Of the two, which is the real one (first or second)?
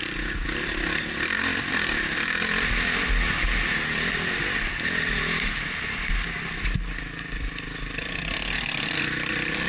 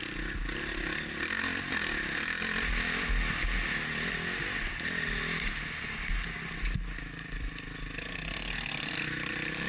second